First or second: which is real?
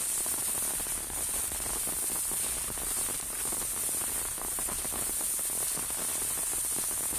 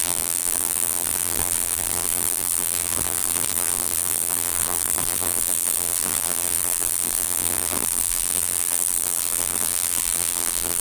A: first